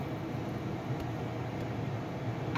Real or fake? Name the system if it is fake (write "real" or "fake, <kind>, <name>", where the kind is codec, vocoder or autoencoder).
real